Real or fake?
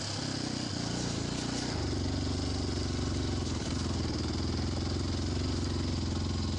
real